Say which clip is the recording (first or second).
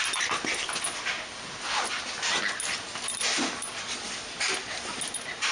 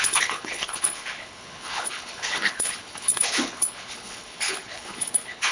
first